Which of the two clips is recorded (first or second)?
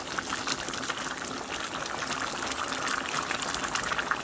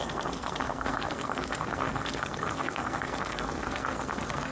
first